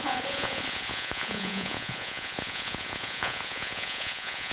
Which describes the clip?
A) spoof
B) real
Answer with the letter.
A